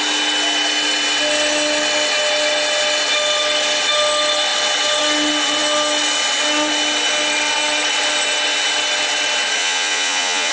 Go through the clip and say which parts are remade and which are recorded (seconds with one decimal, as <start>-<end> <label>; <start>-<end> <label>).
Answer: 0.0-9.6 recorded; 9.6-10.5 remade